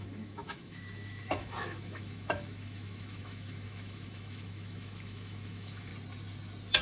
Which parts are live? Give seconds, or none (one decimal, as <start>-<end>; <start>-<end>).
5.9-6.8